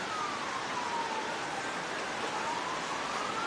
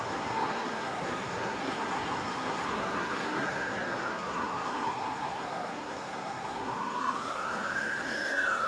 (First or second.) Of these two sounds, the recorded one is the first